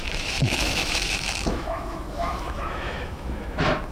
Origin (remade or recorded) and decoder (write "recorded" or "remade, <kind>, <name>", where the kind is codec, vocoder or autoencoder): remade, autoencoder, DAC-VAE